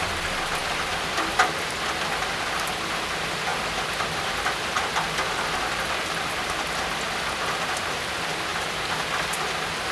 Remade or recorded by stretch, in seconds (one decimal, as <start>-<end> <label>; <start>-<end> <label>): 0.0-9.9 recorded

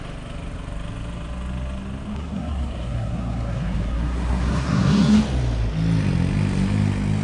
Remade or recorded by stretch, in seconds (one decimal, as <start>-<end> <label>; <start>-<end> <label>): 0.0-2.1 recorded; 2.1-5.2 remade; 5.2-7.2 recorded

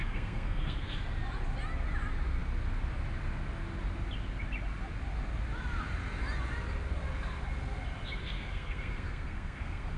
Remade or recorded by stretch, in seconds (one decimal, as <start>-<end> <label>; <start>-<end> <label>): 0.0-1.0 remade; 1.0-8.2 recorded; 8.2-10.0 remade

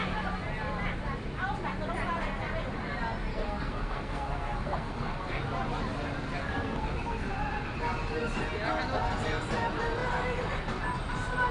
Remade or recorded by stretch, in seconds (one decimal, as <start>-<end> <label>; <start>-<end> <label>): 0.0-3.3 recorded; 3.3-5.4 remade; 5.4-6.4 recorded; 6.4-7.3 remade; 7.3-11.5 recorded

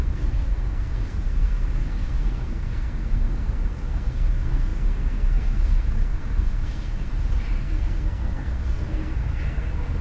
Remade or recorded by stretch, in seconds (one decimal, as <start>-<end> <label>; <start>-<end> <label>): 0.0-7.1 remade; 7.1-7.6 recorded; 7.6-10.0 remade

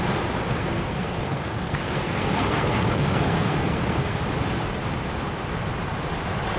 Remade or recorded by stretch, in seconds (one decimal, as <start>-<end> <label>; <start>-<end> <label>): 0.0-0.5 recorded; 0.5-4.2 remade; 4.2-6.6 recorded

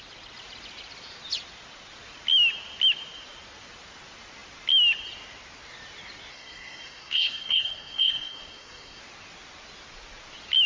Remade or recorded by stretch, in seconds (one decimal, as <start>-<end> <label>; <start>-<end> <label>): 0.0-6.3 recorded; 6.3-9.0 remade; 9.0-10.7 recorded

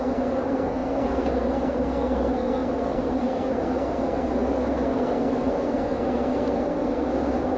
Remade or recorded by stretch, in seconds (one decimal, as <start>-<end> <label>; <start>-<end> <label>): 0.0-7.6 remade